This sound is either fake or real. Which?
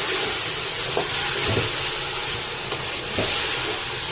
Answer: real